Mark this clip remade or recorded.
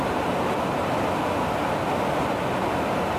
recorded